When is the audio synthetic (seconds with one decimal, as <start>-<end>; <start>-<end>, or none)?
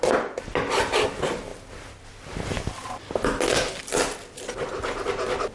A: none